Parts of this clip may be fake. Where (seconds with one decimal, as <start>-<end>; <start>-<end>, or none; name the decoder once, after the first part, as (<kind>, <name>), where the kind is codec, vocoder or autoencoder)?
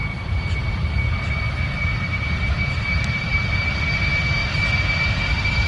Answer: 0.0-4.4 (vocoder, BigVGAN v2)